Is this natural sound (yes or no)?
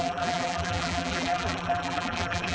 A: no